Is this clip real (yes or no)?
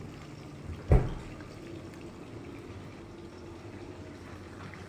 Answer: yes